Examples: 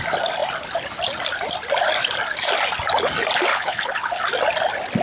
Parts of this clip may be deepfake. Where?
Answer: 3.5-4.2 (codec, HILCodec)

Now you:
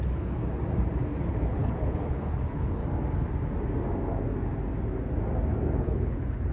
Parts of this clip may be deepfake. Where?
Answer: 0.0-0.4 (codec, HILCodec); 1.3-2.8; 5.8-6.5

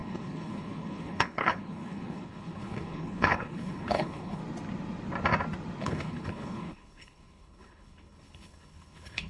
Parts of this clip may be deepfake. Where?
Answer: 0.0-4.4 (codec, HILCodec); 5.8-9.3